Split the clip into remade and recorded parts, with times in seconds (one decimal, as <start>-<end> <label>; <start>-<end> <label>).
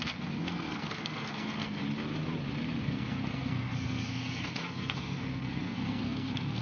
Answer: 0.0-1.8 remade; 1.8-2.8 recorded; 2.8-6.6 remade